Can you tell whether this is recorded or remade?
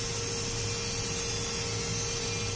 recorded